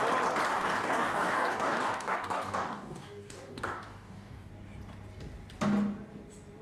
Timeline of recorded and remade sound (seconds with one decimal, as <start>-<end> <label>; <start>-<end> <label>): 0.0-0.5 recorded; 0.5-4.5 remade; 4.5-6.6 recorded

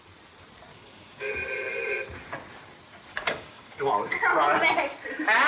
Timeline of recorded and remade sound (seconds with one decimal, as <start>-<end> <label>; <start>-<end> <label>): 0.0-0.7 recorded; 0.7-1.3 remade; 1.3-3.1 recorded; 3.1-3.9 remade; 3.9-5.5 recorded